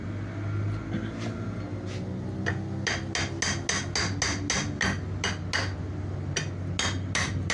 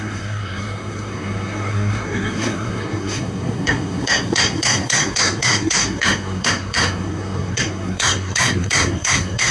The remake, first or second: second